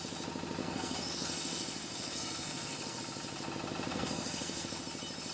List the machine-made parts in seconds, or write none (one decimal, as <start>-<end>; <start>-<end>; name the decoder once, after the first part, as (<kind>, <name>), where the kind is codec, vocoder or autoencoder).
0.6-3.0 (codec, SNAC); 3.9-4.8